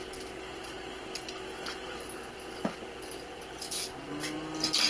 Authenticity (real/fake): real